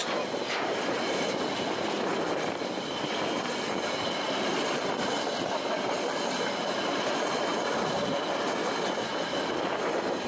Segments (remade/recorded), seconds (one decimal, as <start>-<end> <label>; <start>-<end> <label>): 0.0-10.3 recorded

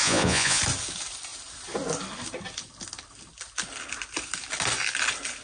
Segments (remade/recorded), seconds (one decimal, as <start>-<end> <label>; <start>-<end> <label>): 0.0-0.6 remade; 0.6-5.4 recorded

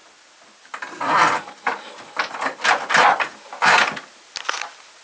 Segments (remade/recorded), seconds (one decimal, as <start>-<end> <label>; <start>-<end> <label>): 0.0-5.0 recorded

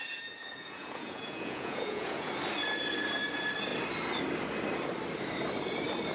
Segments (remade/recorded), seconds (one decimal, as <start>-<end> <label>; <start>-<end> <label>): 0.0-0.4 recorded; 0.4-2.3 remade; 2.3-6.1 recorded

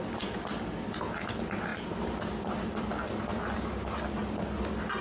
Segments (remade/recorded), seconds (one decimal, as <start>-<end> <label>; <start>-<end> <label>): 0.0-5.0 recorded

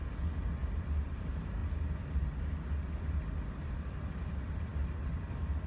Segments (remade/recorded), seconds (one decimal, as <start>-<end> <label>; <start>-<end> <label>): 0.0-5.7 recorded